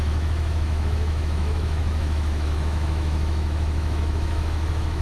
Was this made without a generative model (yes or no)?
no